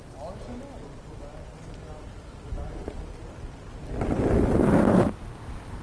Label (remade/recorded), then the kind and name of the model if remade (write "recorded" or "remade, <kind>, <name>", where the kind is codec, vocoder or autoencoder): recorded